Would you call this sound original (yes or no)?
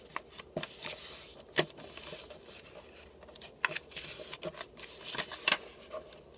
yes